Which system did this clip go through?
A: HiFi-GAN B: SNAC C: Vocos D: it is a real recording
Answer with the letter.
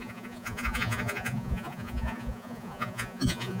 C